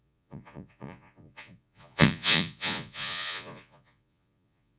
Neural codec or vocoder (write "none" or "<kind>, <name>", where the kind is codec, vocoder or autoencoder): vocoder, Vocos